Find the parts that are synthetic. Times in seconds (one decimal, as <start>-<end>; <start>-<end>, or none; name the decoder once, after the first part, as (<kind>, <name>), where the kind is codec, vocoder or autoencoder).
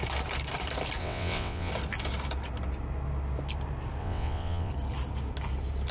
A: 1.0-1.7 (vocoder, WaveNeXt); 4.0-4.7